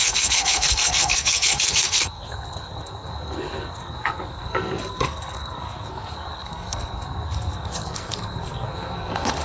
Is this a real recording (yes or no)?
no